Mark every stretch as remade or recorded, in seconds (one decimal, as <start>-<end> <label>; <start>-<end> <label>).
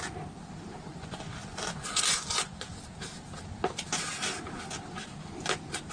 0.0-0.9 recorded; 0.9-2.8 remade; 2.8-5.9 recorded